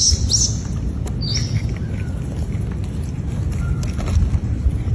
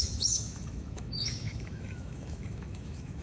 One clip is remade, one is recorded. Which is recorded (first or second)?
first